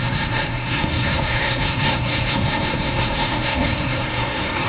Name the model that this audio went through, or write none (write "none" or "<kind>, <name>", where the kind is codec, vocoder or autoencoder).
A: codec, SNAC